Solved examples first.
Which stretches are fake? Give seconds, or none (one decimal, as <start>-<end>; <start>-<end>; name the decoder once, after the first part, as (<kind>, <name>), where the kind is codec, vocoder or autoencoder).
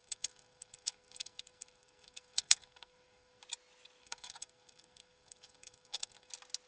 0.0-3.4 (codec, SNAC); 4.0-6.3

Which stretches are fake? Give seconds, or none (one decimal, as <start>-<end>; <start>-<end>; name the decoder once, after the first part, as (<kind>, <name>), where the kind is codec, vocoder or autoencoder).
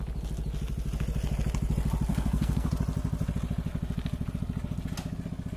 2.1-2.7 (codec, SNAC)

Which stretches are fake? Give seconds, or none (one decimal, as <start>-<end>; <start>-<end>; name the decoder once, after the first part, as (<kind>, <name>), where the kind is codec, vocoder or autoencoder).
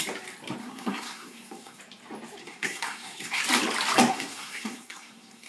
0.6-1.8 (codec, SNAC); 2.4-3.4; 4.1-5.5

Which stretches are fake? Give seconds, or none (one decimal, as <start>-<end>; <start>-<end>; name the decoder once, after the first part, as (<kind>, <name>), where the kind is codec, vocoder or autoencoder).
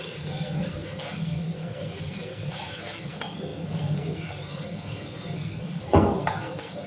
0.0-6.9 (codec, SNAC)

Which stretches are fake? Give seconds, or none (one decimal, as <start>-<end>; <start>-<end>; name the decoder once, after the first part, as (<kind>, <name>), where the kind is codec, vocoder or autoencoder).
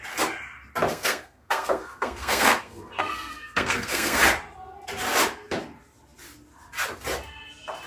0.9-4.2 (codec, SNAC)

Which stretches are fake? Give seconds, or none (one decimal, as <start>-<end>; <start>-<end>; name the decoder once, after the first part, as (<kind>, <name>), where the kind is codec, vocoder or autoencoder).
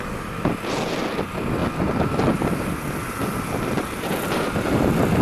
none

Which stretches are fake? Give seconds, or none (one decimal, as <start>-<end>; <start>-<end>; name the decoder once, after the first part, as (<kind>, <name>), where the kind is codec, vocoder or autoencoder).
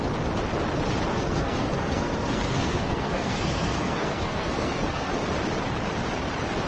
1.1-5.1 (codec, SNAC)